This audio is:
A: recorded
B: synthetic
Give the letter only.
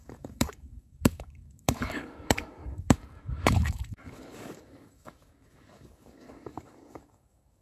B